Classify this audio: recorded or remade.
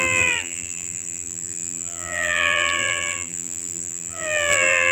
remade